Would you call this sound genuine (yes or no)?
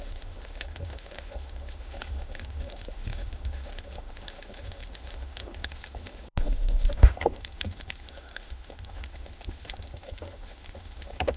no